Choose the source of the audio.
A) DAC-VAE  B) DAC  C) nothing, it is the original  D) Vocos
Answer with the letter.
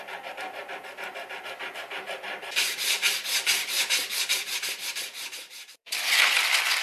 C